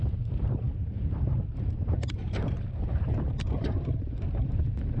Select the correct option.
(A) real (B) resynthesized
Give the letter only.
B